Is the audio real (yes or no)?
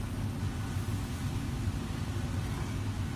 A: yes